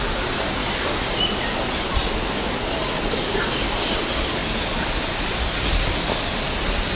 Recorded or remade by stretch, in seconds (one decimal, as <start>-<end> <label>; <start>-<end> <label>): 0.0-7.0 recorded

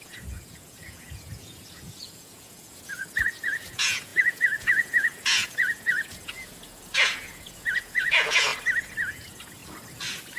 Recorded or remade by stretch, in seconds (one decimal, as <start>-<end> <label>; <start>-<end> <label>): 0.0-8.5 remade; 8.5-9.1 recorded; 9.1-9.6 remade; 9.6-10.4 recorded

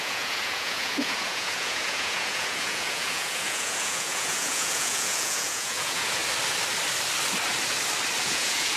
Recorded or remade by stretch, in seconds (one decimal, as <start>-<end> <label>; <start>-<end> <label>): 0.0-6.2 remade; 6.2-8.2 recorded; 8.2-8.8 remade

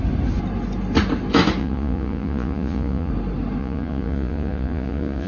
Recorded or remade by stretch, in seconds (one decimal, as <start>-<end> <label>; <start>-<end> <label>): 0.0-1.6 recorded; 1.6-3.1 remade; 3.1-3.6 recorded; 3.6-5.3 remade

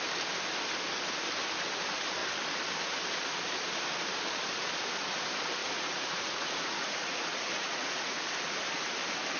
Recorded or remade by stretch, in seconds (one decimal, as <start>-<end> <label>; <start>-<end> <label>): 0.0-5.6 recorded; 5.6-8.2 remade; 8.2-9.4 recorded

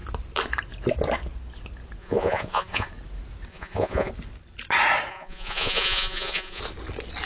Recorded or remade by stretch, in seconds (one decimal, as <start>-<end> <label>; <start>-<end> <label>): 0.0-2.0 recorded; 2.0-2.9 remade; 2.9-3.5 recorded; 3.5-4.1 remade; 4.1-5.1 recorded; 5.1-6.6 remade; 6.6-7.3 recorded

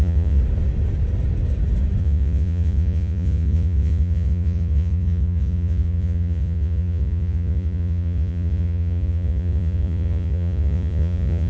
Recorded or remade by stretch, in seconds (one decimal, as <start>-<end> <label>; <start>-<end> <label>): 0.0-0.4 remade; 0.4-2.0 recorded; 2.0-11.5 remade

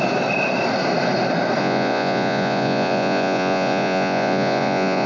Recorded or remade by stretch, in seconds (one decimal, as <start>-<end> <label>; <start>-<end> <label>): 0.0-1.6 recorded; 1.6-5.1 remade